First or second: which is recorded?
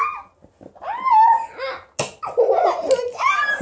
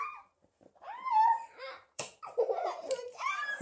first